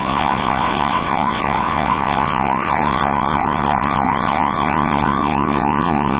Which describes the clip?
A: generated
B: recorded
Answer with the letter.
A